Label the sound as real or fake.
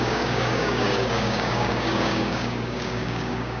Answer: fake